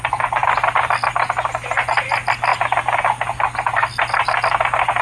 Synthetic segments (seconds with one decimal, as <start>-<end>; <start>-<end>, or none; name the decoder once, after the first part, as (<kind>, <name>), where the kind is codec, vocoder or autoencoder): none

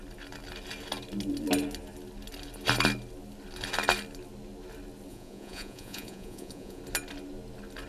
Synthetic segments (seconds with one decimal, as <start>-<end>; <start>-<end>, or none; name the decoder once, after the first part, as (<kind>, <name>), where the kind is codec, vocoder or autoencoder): 5.1-6.8 (vocoder, Vocos)

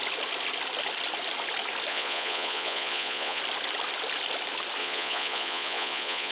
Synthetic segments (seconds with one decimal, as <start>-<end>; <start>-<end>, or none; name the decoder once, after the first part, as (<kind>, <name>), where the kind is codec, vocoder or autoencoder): 1.9-3.4 (vocoder, Vocos); 4.8-6.3

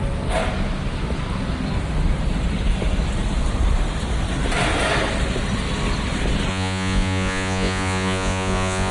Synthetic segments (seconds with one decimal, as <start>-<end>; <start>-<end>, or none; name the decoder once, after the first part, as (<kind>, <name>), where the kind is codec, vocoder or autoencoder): 6.5-8.9 (vocoder, Vocos)

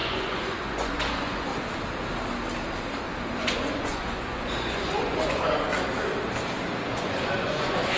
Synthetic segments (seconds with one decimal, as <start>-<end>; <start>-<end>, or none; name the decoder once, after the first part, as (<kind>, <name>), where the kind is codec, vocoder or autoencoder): 0.0-1.5 (vocoder, Vocos); 3.4-5.7; 6.9-8.0

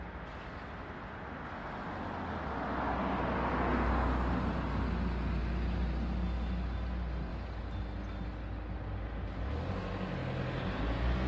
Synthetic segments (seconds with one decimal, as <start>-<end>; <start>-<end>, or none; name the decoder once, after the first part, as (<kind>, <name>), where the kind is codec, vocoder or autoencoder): none

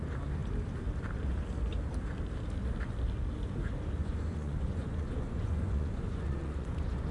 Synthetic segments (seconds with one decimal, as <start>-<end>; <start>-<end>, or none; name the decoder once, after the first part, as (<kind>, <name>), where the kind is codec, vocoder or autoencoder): 4.0-7.1 (vocoder, Vocos)

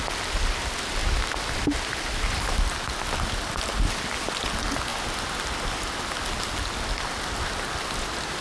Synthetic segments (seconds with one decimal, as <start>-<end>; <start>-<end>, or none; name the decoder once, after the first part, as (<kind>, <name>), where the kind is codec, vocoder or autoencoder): none